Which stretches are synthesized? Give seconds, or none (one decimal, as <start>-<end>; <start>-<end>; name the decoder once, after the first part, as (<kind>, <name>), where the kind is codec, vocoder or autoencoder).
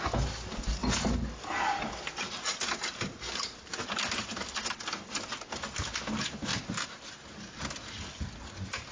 6.5-7.1 (vocoder, BigVGAN v2)